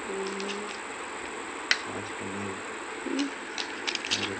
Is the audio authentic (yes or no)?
yes